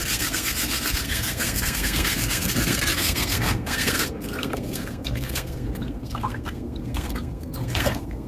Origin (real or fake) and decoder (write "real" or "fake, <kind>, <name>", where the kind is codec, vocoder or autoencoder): fake, codec, SNAC